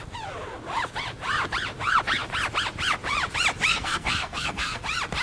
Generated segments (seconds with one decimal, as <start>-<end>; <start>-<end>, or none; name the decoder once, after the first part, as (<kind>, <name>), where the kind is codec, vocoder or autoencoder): 3.7-4.8 (codec, SNAC)